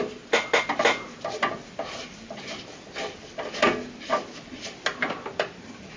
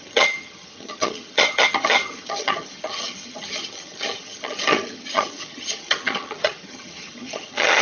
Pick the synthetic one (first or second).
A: second